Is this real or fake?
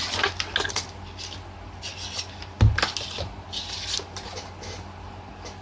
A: real